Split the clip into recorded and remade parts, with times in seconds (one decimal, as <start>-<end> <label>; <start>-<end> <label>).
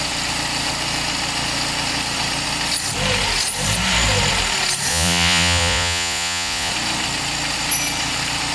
0.0-4.9 recorded; 4.9-6.7 remade; 6.7-8.5 recorded